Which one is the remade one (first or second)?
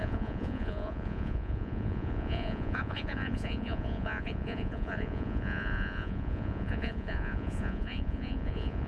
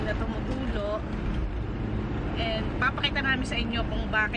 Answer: first